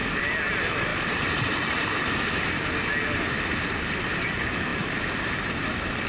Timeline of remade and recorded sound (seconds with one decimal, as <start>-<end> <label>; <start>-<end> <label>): 0.0-6.1 recorded